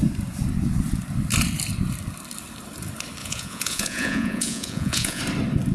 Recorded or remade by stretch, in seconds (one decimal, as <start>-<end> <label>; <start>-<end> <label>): 0.0-3.2 recorded; 3.2-5.2 remade; 5.2-5.7 recorded